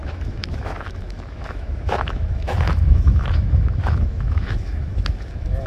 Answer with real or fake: fake